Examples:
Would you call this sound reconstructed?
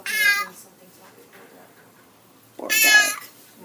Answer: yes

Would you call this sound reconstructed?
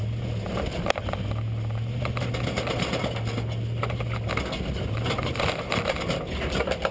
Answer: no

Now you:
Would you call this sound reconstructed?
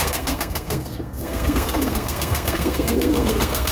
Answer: yes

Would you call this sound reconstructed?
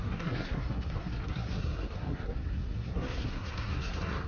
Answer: yes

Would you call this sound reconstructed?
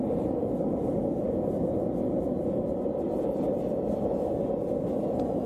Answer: no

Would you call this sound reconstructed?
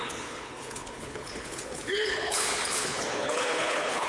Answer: yes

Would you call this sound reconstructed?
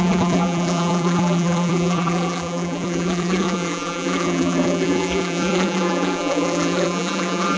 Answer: yes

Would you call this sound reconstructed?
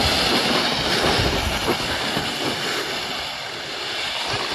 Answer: no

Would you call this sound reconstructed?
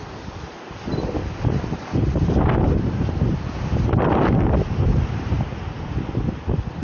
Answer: no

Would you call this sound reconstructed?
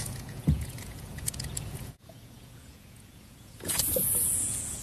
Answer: yes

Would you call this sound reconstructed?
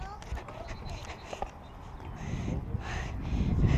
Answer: no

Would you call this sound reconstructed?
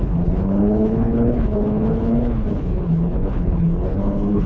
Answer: yes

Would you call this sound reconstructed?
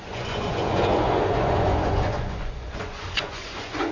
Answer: yes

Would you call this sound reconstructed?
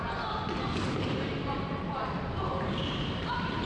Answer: no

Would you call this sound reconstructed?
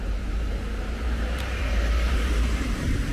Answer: yes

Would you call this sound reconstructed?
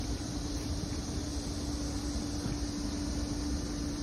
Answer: no